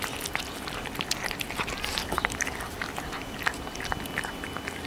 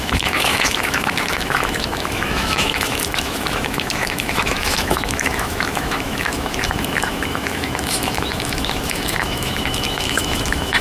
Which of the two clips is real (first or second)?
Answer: first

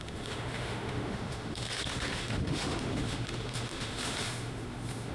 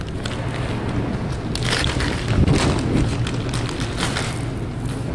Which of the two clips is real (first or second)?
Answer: second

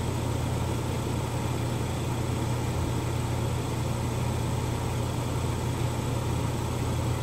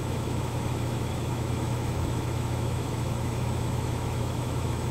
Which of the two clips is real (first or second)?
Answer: first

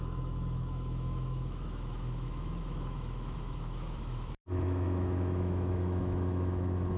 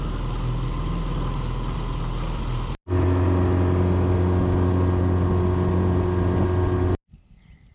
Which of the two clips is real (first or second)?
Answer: second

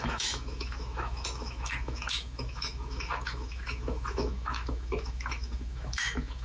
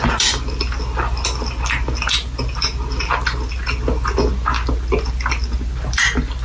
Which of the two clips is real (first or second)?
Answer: second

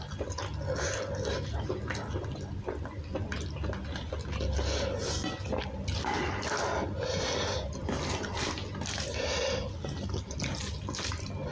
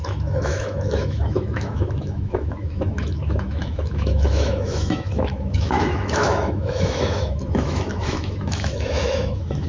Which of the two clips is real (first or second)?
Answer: first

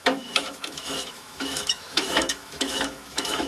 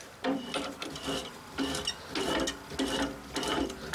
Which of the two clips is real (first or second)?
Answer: second